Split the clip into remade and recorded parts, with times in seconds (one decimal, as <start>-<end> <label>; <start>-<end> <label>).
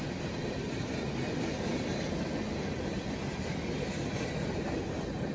0.0-5.3 recorded